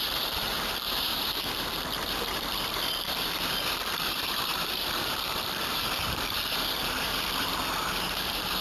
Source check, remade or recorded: remade